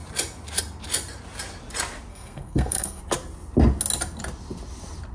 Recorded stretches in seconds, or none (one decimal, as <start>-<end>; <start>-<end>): 0.0-2.1; 3.0-5.1